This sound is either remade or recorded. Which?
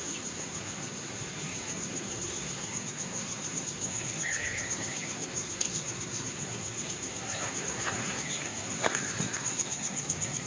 remade